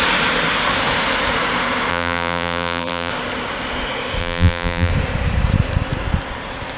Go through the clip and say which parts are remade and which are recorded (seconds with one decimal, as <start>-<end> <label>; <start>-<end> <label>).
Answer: 0.0-1.9 recorded; 1.9-3.1 remade; 3.1-4.2 recorded; 4.2-4.9 remade; 4.9-6.8 recorded